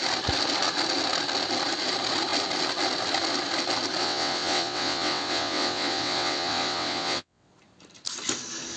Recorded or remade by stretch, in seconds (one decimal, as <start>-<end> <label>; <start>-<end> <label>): 0.0-4.0 recorded; 4.0-7.5 remade; 7.5-8.8 recorded